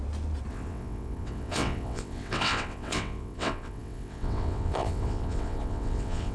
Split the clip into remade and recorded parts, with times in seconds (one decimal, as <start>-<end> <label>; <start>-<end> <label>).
0.0-0.5 recorded; 0.5-6.3 remade